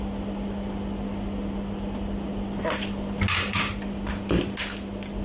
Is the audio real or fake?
real